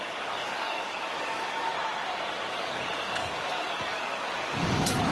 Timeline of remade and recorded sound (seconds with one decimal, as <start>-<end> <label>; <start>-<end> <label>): 0.0-1.7 remade; 1.7-2.5 recorded; 2.5-5.1 remade